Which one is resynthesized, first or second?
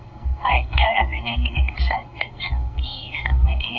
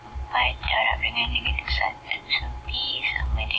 first